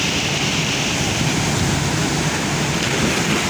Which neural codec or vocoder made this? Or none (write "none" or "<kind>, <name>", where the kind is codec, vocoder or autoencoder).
none